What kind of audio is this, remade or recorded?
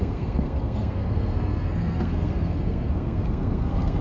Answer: remade